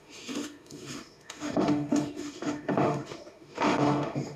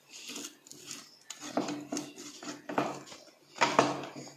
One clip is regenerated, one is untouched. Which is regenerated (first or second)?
first